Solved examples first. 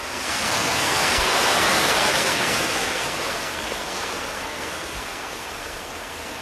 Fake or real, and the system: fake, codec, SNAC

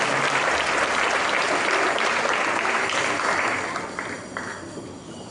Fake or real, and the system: real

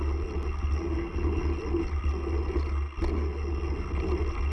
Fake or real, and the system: real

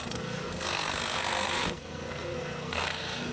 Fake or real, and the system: fake, codec, SNAC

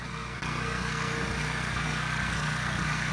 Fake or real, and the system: fake, codec, SNAC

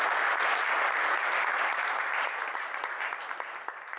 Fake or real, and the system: real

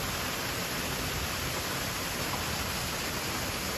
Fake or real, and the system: real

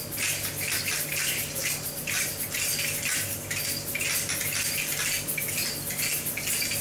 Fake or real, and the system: real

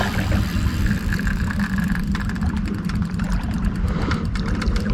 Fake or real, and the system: real